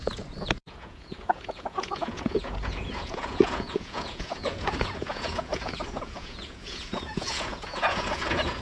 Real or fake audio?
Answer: fake